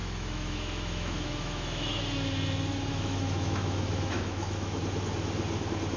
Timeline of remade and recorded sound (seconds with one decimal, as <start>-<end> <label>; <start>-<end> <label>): 0.0-2.0 remade; 2.0-2.9 recorded; 2.9-4.8 remade; 4.8-6.0 recorded